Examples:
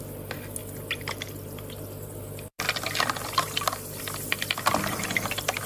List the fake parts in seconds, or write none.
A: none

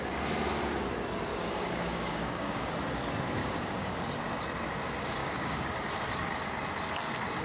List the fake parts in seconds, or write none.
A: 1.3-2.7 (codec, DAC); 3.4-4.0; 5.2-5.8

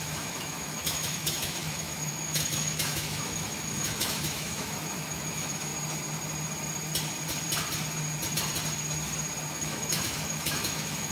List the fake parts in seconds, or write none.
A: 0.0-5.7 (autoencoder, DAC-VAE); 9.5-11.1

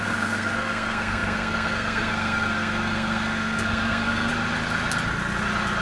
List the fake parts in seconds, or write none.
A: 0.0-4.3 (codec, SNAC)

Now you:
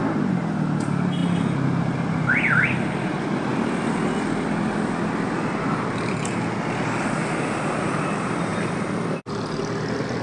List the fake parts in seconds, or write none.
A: none